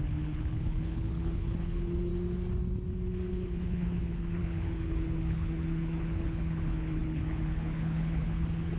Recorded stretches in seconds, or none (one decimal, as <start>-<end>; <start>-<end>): 2.1-3.3